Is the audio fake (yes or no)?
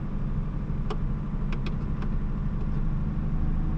no